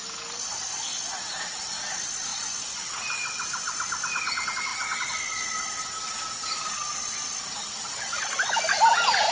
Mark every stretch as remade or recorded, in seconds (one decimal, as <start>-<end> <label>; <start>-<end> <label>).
0.0-2.3 recorded; 2.3-2.9 remade; 2.9-9.3 recorded